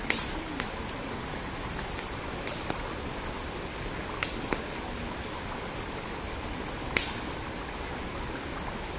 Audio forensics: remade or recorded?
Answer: recorded